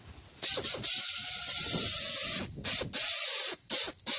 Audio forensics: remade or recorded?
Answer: recorded